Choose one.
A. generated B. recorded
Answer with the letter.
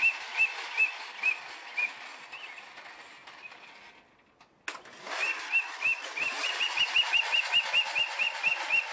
B